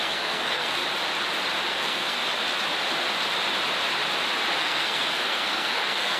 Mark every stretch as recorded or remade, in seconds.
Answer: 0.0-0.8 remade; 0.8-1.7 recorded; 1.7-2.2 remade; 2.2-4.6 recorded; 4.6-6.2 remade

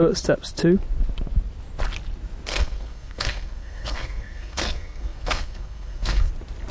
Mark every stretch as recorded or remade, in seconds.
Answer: 0.0-2.5 recorded; 2.5-6.3 remade; 6.3-6.7 recorded

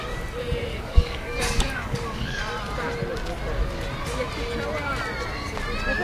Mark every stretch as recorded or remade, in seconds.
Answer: 0.0-0.7 recorded; 0.7-2.4 remade; 2.4-6.0 recorded

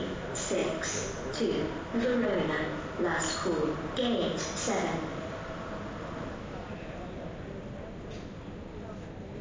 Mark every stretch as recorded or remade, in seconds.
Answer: 0.0-5.1 recorded; 5.1-5.7 remade; 5.7-9.4 recorded

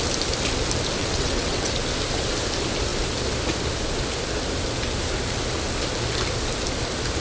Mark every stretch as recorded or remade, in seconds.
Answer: 0.0-1.0 recorded; 1.0-1.7 remade; 1.7-7.2 recorded

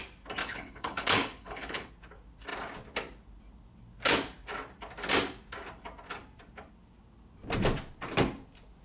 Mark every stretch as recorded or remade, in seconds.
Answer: 0.0-0.4 recorded; 0.4-1.9 remade; 1.9-8.8 recorded

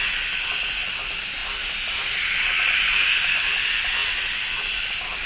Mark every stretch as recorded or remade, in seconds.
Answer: 0.0-5.3 recorded